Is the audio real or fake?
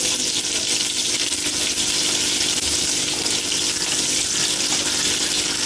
real